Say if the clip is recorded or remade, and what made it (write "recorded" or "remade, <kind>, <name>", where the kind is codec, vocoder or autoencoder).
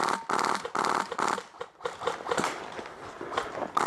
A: recorded